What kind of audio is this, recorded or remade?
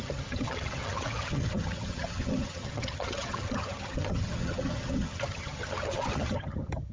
remade